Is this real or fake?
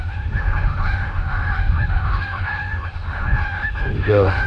fake